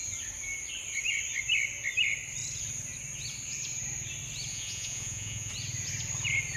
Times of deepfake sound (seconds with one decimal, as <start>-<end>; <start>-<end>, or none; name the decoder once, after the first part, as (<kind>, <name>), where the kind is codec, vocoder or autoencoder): 4.5-5.5 (vocoder, Vocos)